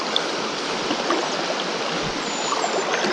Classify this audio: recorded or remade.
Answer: recorded